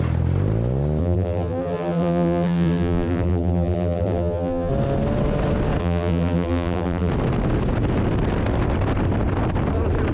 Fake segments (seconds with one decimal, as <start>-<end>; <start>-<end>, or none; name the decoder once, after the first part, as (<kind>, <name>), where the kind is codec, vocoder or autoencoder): 1.0-4.7 (vocoder, BigVGAN v2); 5.8-7.1